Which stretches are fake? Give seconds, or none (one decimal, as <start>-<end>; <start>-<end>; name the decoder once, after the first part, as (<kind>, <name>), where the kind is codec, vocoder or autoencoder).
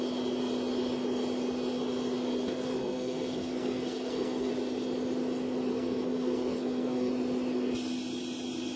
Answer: 2.8-4.5 (codec, SNAC); 5.7-7.1